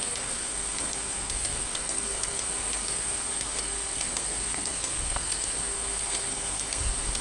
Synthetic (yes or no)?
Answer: yes